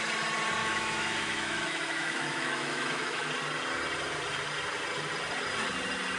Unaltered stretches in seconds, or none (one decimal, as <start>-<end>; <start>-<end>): 0.0-0.6; 3.3-6.2